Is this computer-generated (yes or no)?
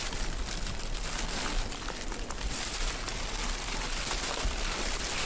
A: no